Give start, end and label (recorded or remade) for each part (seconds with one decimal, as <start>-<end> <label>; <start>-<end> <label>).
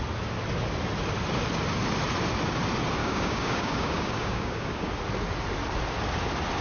0.0-3.0 recorded; 3.0-4.9 remade; 4.9-6.6 recorded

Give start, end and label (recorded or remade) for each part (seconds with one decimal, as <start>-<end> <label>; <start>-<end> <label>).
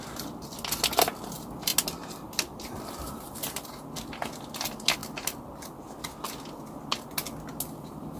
0.0-8.2 recorded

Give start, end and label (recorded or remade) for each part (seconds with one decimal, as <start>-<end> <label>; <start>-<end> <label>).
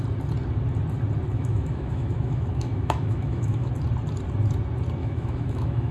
0.0-1.3 recorded; 1.3-3.7 remade; 3.7-5.0 recorded; 5.0-5.9 remade